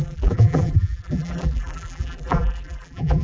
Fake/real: fake